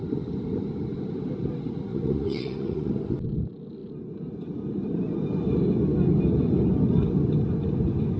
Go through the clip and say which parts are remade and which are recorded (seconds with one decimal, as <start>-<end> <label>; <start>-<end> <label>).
0.0-1.9 recorded; 1.9-2.9 remade; 2.9-8.2 recorded